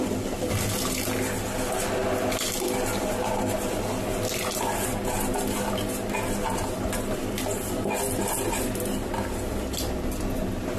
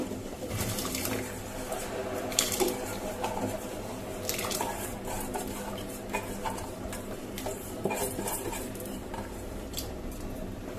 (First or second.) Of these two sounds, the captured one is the first